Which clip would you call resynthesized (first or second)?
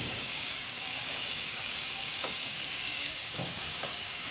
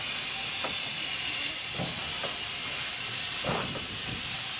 first